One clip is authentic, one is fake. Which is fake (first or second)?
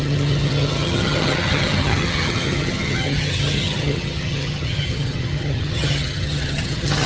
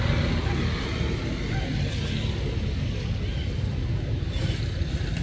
first